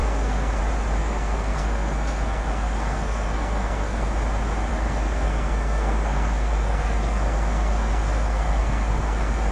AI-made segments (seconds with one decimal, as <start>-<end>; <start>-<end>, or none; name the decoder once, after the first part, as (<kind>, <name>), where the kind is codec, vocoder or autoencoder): 0.0-0.6 (codec, SNAC); 1.0-4.1; 4.7-9.5